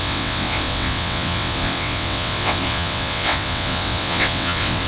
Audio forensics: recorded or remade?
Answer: remade